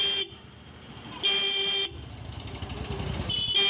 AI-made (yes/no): no